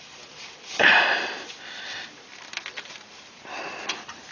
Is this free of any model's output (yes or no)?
no